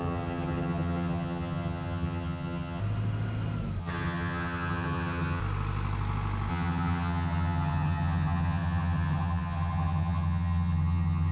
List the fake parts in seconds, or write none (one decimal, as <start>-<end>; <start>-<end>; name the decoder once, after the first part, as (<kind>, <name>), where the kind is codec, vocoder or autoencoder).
0.0-2.8 (vocoder, HiFi-GAN); 3.8-5.4; 6.5-11.3